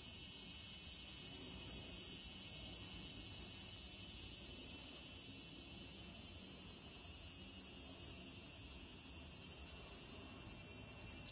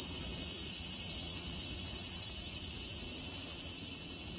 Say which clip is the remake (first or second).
second